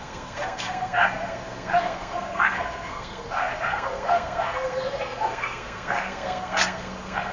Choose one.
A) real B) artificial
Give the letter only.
B